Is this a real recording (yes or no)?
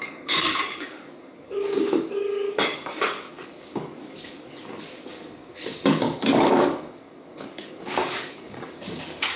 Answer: no